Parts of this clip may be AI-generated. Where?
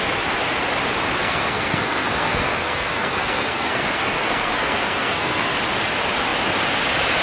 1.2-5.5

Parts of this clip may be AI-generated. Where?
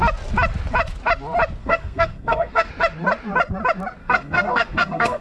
1.6-2.7; 4.0-5.2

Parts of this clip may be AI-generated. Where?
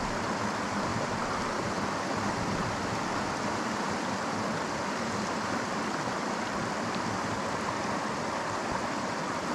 none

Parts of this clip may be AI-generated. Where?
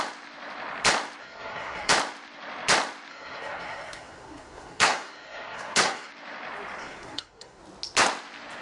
1.2-1.9; 3.1-6.1; 6.8-7.6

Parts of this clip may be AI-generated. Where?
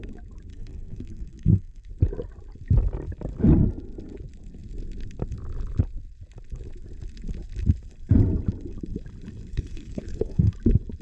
0.5-1.9; 9.5-10.5